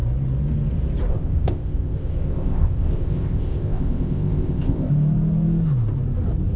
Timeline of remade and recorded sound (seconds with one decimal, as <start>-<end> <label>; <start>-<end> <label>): 0.0-1.1 recorded; 1.1-4.9 remade; 4.9-6.6 recorded